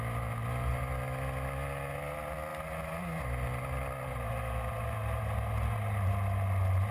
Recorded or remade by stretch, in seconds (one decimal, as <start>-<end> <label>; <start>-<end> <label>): 0.0-6.9 recorded